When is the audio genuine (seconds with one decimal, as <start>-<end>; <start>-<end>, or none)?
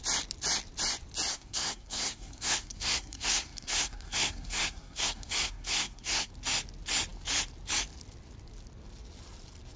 0.0-1.3; 6.3-9.8